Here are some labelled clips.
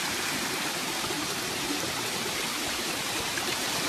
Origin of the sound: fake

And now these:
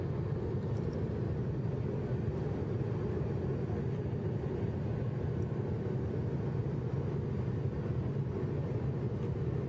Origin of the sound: real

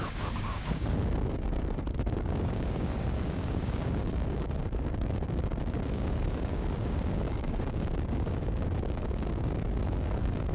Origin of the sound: fake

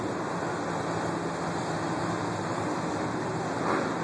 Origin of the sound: real